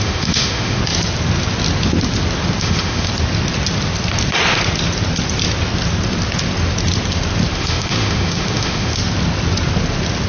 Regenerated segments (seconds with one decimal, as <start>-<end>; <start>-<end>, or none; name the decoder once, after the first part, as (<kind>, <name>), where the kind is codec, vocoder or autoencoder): 0.0-0.8 (autoencoder, DAC-VAE); 2.6-3.1; 7.5-8.9